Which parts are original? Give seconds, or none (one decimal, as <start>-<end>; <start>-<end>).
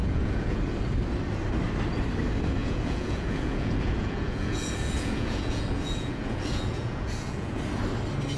0.6-2.6; 7.6-8.4